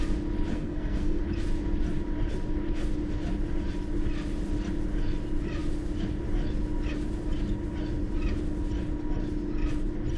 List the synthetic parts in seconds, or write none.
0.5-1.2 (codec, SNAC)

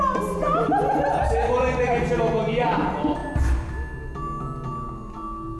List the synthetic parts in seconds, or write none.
none

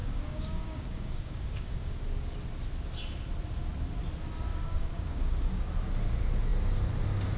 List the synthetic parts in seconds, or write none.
0.0-1.9 (codec, DAC); 4.5-5.6

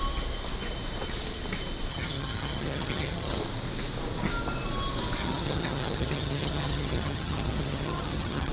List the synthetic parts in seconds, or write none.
1.9-3.4 (vocoder, HiFi-GAN); 5.2-8.5

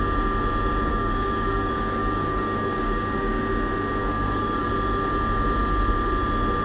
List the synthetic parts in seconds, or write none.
0.9-3.4 (codec, DAC); 4.0-4.7

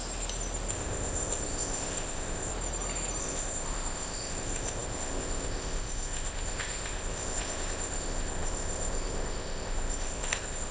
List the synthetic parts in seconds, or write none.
0.7-2.5 (codec, ZipCodec); 3.2-10.7

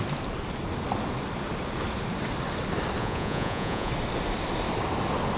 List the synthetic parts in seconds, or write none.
3.0-3.9 (vocoder, Vocos)

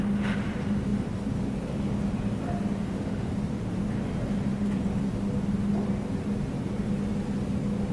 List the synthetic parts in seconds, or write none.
2.8-3.3 (autoencoder, DAC-VAE)